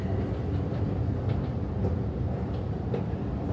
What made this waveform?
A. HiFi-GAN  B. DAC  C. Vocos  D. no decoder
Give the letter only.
D